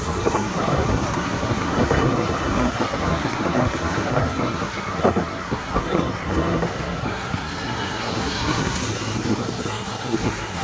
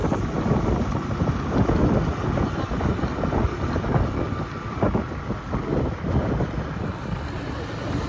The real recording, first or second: second